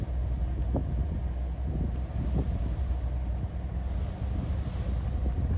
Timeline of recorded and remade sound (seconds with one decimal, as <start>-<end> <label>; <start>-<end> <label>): 0.0-5.6 recorded